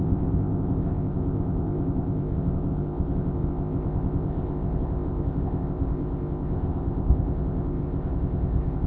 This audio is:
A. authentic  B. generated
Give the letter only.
B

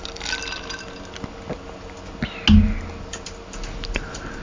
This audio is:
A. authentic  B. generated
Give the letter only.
A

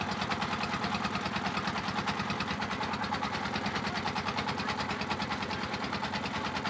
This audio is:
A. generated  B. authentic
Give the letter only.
B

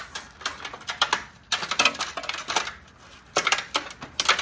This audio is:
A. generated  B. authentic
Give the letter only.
B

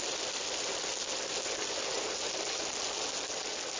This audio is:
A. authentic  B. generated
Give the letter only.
A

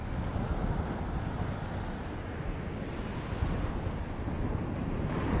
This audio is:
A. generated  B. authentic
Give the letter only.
B